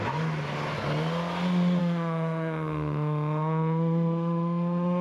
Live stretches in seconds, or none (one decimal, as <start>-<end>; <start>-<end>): 0.0-1.8